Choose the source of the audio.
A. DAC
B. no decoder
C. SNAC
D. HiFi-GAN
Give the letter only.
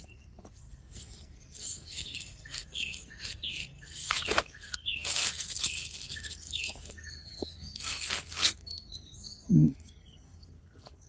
C